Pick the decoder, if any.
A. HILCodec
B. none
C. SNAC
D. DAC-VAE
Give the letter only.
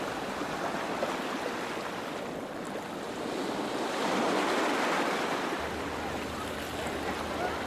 B